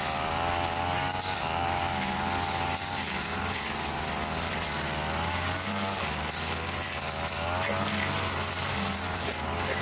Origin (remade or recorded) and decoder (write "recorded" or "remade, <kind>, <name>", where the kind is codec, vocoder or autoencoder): recorded